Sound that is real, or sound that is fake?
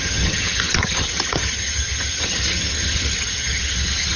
fake